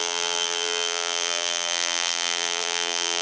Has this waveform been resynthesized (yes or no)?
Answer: yes